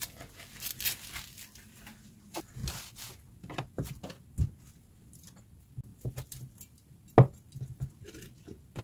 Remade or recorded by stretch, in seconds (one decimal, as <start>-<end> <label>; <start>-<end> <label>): 0.0-8.8 recorded

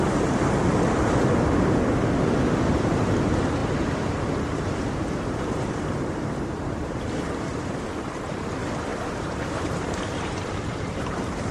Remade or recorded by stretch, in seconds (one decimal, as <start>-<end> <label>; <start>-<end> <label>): 0.0-3.6 recorded; 3.6-7.0 remade; 7.0-8.9 recorded; 8.9-11.5 remade

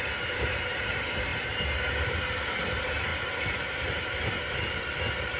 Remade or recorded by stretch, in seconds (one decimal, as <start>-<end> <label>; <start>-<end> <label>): 0.0-5.4 remade

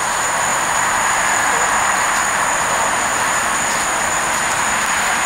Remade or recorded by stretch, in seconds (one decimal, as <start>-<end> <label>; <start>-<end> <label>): 0.0-3.1 recorded; 3.1-3.9 remade; 3.9-5.3 recorded

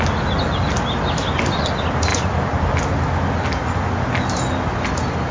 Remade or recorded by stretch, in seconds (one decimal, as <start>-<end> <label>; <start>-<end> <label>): 0.0-5.3 recorded